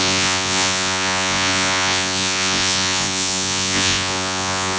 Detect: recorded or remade remade